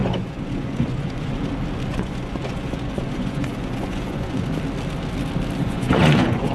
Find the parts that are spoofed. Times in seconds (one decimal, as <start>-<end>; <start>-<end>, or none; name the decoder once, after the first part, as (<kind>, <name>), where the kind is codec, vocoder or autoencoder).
0.0-1.5 (vocoder, Vocos); 1.9-4.5; 5.6-6.5